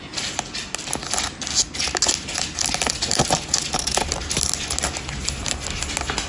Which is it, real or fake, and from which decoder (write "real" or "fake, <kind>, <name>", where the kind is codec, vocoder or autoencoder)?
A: real